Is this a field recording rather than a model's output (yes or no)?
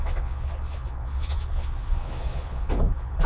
no